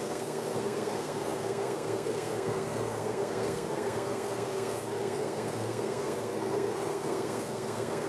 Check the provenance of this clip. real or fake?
fake